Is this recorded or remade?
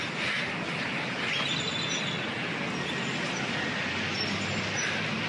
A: recorded